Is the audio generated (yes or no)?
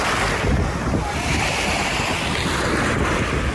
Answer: no